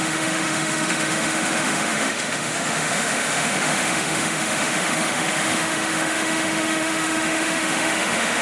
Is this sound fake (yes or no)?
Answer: yes